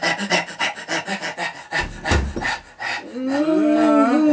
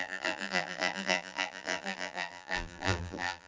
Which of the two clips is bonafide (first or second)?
first